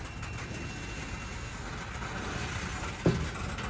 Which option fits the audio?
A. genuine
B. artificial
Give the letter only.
A